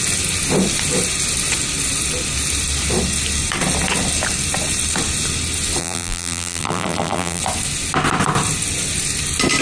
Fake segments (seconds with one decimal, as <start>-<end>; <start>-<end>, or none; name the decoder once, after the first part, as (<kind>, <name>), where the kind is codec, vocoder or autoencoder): 5.8-7.4 (vocoder, BigVGAN v2)

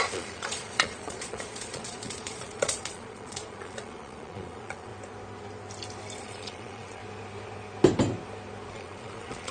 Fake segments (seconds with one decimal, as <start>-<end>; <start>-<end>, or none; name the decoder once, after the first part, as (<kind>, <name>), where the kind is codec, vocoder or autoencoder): 0.0-4.9 (vocoder, Vocos); 6.2-7.0; 8.7-9.5

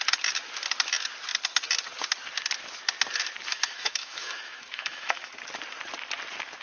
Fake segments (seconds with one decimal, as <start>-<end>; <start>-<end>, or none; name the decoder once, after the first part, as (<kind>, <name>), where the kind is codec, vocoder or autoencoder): 3.5-5.3 (autoencoder, DAC-VAE)